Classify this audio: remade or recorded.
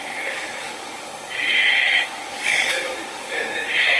remade